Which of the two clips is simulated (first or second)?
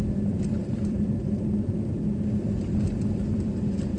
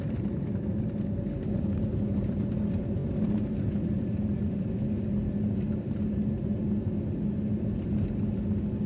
first